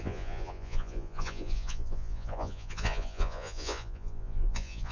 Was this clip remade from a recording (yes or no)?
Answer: yes